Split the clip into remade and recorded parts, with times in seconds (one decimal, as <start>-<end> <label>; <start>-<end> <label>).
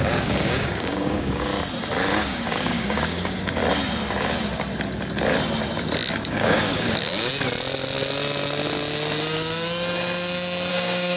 0.0-1.5 remade; 1.5-2.1 recorded; 2.1-3.6 remade; 3.6-6.3 recorded; 6.3-7.3 remade; 7.3-10.7 recorded; 10.7-11.2 remade